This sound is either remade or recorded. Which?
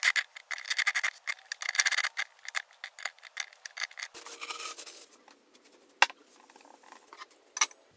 recorded